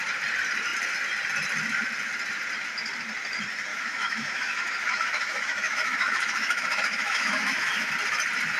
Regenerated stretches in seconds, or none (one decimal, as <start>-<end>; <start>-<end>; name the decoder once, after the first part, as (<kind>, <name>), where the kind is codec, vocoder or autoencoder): 3.7-7.9 (autoencoder, DAC-VAE)